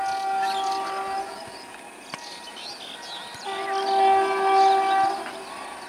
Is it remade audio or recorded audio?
recorded